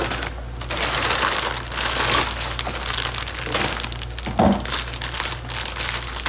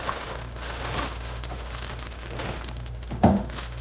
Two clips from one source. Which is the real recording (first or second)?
first